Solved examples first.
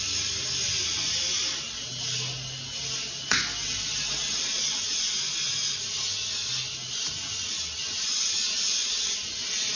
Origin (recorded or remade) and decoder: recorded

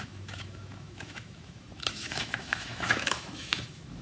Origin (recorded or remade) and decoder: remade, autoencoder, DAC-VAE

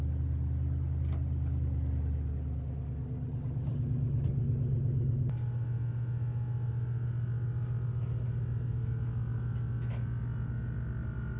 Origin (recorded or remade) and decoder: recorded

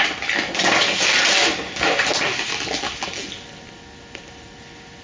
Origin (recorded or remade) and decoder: recorded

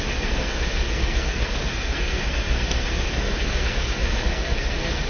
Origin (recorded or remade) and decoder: remade, codec, SNAC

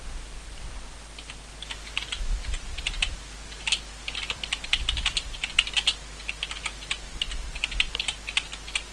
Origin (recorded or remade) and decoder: recorded